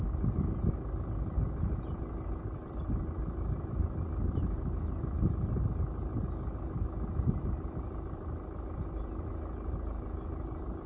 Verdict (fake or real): real